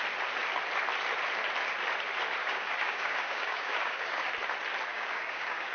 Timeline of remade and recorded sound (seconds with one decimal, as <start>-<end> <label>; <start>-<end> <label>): 0.0-2.4 recorded; 2.4-4.3 remade; 4.3-4.9 recorded; 4.9-5.7 remade